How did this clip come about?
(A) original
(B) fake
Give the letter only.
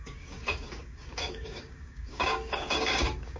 B